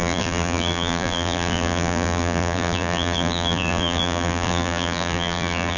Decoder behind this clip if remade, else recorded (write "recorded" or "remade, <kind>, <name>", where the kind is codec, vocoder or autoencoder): remade, vocoder, BigVGAN v2